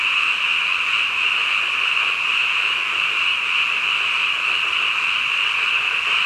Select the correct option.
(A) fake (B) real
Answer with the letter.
B